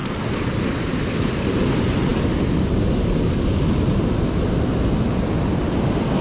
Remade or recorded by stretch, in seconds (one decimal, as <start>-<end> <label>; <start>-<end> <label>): 0.0-6.2 recorded

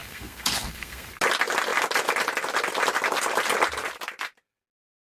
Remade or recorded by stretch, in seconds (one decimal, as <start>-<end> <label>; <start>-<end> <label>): 0.0-1.1 remade; 1.1-5.1 recorded